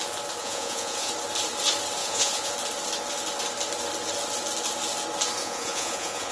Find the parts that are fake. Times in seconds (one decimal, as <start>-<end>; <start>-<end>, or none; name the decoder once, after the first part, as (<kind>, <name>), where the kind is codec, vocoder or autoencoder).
0.4-1.1 (vocoder, Vocos); 2.0-2.5; 5.4-6.3